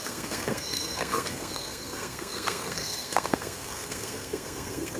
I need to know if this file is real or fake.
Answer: fake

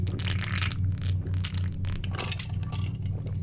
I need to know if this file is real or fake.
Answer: real